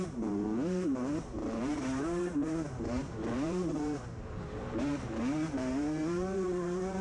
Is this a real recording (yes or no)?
no